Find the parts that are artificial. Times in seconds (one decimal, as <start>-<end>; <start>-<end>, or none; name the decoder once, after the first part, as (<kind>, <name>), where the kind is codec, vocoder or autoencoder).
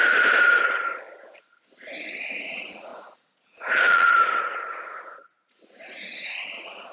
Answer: 2.3-6.9 (vocoder, Vocos)